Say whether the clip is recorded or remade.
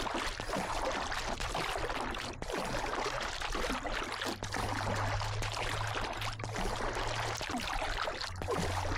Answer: recorded